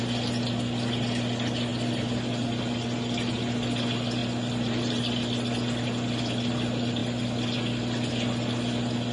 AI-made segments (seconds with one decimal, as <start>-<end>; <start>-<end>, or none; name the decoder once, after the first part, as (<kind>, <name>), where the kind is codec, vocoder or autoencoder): none

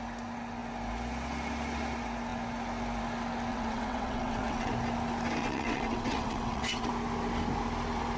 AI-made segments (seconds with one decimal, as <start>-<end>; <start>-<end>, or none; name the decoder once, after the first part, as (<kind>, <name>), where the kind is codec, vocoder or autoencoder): 3.5-4.7 (vocoder, WaveNeXt); 5.4-6.9

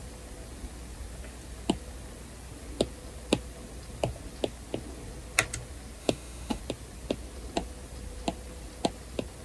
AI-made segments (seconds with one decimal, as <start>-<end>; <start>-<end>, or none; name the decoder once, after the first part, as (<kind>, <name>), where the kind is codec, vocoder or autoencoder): 6.0-6.6 (autoencoder, DAC-VAE)

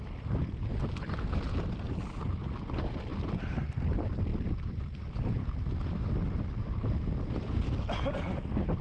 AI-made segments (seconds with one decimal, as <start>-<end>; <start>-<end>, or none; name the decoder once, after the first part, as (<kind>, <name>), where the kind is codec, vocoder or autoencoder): none